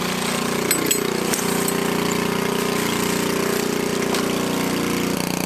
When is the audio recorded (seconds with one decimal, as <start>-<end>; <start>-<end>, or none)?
0.0-5.5